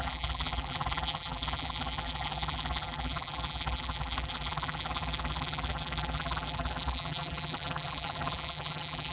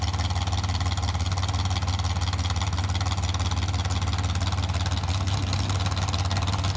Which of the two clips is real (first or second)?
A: second